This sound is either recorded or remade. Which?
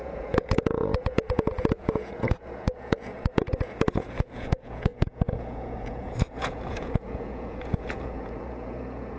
remade